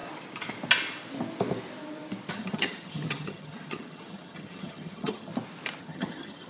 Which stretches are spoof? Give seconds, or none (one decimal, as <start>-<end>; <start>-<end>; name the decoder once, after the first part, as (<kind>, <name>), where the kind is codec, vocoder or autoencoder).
2.3-5.3 (vocoder, HiFi-GAN); 5.8-6.5